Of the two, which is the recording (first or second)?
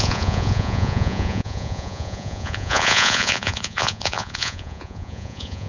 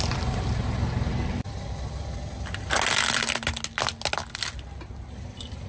second